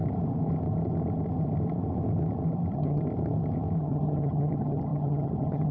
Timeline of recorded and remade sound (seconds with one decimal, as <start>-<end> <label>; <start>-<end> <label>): 0.0-2.7 recorded; 2.7-3.1 remade; 3.1-3.8 recorded; 3.8-5.7 remade